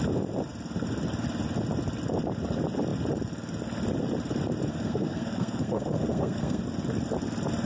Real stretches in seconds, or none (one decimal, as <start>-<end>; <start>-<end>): 0.0-4.7; 6.6-7.7